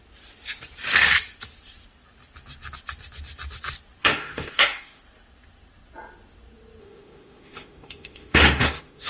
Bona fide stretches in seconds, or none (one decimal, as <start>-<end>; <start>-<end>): 0.0-4.0; 5.0-6.8